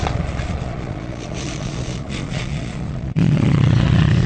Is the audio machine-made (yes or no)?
yes